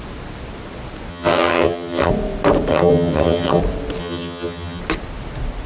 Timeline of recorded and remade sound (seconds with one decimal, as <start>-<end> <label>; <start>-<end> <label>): 0.0-1.1 recorded; 1.1-2.1 remade; 2.1-2.7 recorded; 2.7-3.6 remade; 3.6-4.0 recorded; 4.0-4.8 remade; 4.8-5.7 recorded

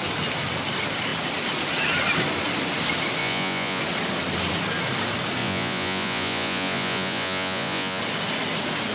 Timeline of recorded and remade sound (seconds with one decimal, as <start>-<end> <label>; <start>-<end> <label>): 0.0-3.2 recorded; 3.2-3.8 remade; 3.8-5.4 recorded; 5.4-8.0 remade; 8.0-8.9 recorded

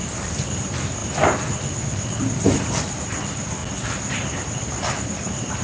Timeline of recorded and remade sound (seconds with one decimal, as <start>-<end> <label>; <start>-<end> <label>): 0.0-1.0 remade; 1.0-2.2 recorded; 2.2-3.6 remade; 3.6-4.6 recorded; 4.6-5.6 remade

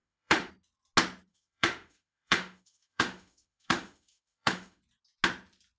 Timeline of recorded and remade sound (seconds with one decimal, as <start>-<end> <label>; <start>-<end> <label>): 0.0-0.5 remade; 0.5-1.3 recorded; 1.3-4.8 remade; 4.8-5.8 recorded

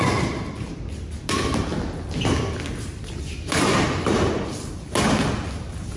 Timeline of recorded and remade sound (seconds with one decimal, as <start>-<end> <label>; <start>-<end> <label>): 0.0-6.0 recorded